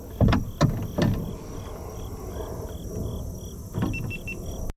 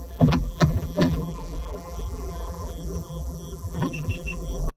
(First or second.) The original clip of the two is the first